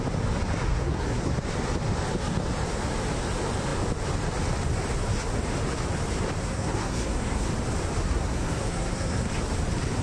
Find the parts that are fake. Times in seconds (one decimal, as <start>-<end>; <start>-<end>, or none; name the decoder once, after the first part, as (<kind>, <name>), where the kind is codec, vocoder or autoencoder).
0.7-1.3 (codec, SNAC); 6.4-7.5; 8.0-9.3